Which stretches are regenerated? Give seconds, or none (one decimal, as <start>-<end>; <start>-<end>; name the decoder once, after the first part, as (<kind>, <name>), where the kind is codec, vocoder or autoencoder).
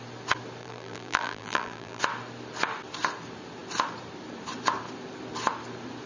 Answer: 0.6-2.0 (vocoder, BigVGAN v2)